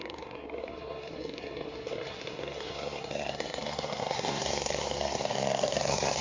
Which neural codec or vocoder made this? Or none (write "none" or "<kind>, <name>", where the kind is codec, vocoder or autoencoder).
codec, SNAC